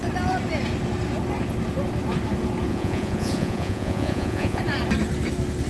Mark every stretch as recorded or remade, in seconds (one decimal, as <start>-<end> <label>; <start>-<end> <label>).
0.0-2.7 recorded; 2.7-4.6 remade; 4.6-5.7 recorded